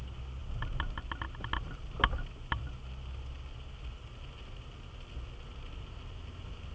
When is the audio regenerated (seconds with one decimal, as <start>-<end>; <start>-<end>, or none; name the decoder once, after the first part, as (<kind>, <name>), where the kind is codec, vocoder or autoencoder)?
none